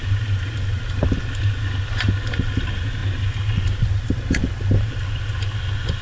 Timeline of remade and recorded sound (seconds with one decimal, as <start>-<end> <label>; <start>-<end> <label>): 0.0-6.0 recorded